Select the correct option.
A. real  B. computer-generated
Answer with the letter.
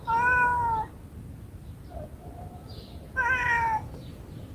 A